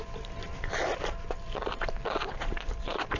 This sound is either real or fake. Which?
fake